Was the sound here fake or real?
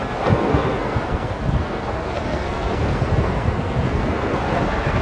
fake